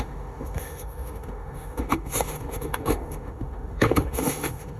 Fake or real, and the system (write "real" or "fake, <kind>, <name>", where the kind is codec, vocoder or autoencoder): fake, autoencoder, DAC-VAE